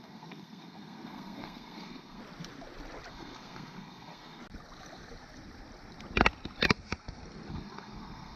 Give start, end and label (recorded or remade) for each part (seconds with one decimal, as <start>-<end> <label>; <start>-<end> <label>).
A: 0.0-2.2 remade; 2.2-3.1 recorded; 3.1-4.4 remade; 4.4-7.5 recorded; 7.5-8.4 remade